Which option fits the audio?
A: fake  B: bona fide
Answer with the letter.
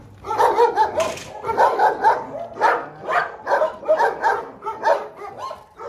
B